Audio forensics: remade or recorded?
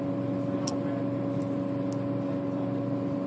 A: remade